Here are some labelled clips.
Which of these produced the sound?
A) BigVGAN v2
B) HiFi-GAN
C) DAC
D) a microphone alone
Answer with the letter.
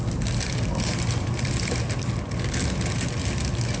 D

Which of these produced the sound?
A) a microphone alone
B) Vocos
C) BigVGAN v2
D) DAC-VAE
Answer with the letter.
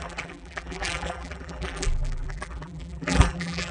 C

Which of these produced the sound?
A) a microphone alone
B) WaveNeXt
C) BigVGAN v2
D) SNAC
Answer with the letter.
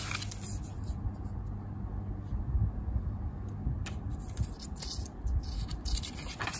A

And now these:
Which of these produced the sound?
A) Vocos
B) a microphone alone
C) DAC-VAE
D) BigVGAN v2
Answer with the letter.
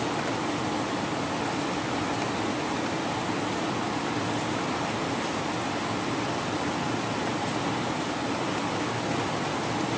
B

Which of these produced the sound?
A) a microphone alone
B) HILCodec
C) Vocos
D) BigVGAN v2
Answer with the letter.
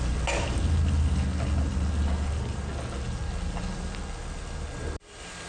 A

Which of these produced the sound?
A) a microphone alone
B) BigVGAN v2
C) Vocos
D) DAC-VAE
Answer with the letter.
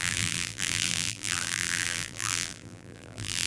B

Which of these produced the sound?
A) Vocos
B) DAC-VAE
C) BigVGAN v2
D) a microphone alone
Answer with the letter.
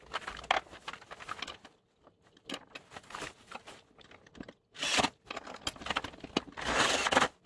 D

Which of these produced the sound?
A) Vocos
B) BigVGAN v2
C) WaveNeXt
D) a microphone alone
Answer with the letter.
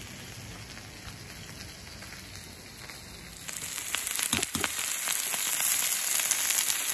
D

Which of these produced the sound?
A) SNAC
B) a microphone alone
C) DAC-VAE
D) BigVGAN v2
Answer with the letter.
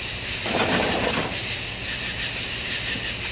B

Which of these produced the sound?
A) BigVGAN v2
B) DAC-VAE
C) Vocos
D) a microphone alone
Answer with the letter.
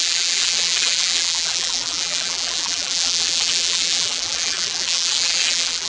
A